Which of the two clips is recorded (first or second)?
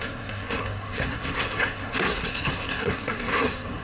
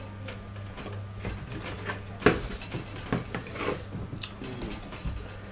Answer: second